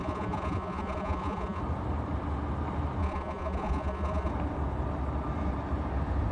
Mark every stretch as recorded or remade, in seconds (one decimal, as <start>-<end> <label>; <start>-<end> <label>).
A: 0.0-1.6 remade; 1.6-3.0 recorded; 3.0-4.3 remade; 4.3-6.3 recorded